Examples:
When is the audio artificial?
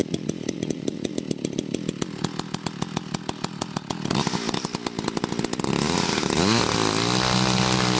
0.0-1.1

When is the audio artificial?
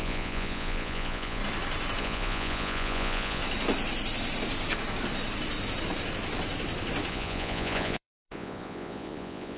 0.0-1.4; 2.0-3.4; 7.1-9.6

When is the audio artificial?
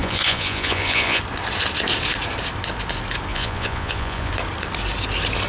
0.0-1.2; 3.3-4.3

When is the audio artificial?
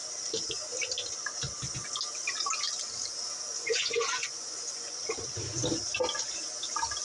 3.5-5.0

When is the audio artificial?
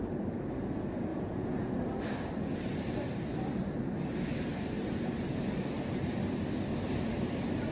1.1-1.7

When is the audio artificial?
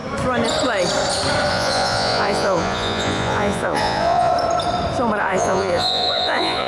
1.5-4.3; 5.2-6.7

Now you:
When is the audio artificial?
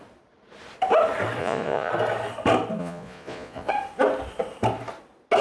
1.4-1.9; 2.8-3.7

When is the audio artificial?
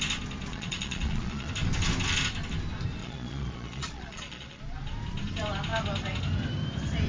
0.5-1.5; 3.0-4.6